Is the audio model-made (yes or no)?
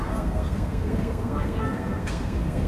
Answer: yes